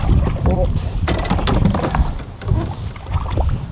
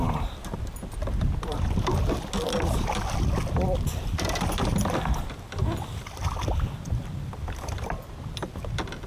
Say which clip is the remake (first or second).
first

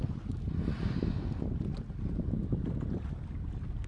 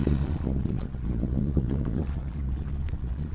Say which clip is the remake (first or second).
second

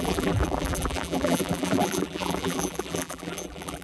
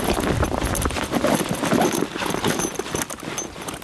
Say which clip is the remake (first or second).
first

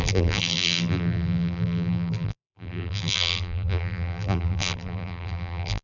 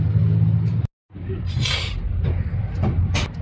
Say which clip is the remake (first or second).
first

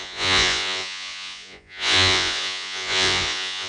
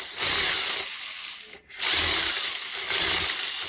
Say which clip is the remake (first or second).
first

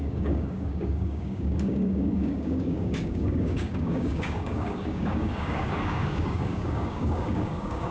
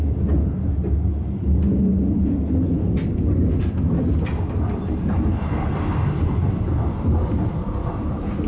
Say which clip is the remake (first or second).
first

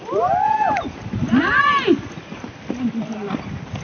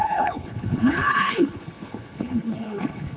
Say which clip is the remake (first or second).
second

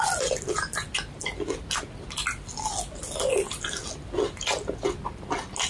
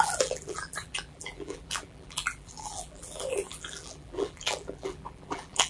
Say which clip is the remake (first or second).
second